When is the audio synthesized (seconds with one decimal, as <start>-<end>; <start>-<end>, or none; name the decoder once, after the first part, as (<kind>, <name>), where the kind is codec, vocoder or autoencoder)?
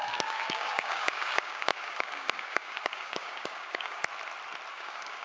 0.0-4.0 (codec, DAC); 4.7-5.2